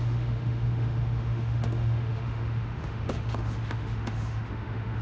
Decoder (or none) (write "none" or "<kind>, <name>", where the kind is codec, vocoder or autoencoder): autoencoder, DAC-VAE